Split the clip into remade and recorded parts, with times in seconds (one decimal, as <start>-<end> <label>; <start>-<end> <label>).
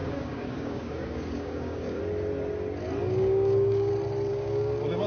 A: 0.0-2.0 remade; 2.0-3.0 recorded; 3.0-3.9 remade; 3.9-4.3 recorded; 4.3-5.1 remade